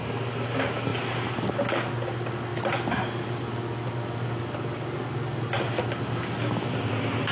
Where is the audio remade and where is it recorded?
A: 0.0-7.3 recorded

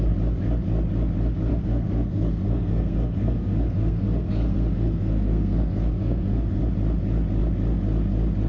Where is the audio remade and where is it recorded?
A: 0.0-1.5 recorded; 1.5-6.6 remade; 6.6-8.5 recorded

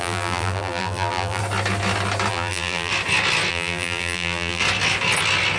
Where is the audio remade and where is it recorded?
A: 0.0-1.4 remade; 1.4-2.3 recorded; 2.3-2.9 remade; 2.9-3.5 recorded; 3.5-4.6 remade; 4.6-5.6 recorded

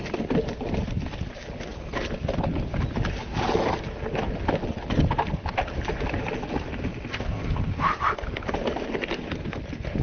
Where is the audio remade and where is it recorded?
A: 0.0-7.1 recorded; 7.1-7.7 remade; 7.7-10.0 recorded